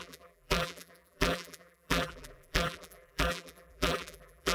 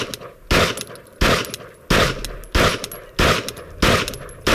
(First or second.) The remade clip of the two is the first